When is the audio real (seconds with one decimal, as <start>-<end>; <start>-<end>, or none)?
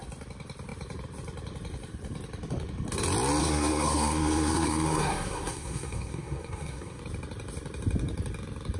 0.0-3.4; 7.0-8.8